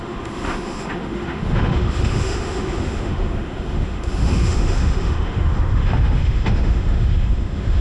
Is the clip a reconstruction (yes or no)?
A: yes